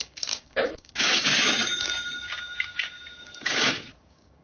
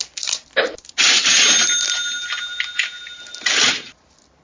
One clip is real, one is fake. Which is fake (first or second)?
first